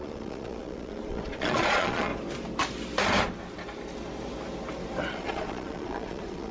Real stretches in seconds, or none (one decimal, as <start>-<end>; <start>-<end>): 2.1-5.1